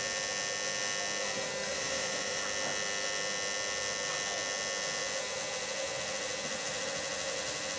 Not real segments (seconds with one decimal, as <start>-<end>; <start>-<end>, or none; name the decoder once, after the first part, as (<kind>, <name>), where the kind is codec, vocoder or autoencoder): 1.7-2.4 (vocoder, BigVGAN v2)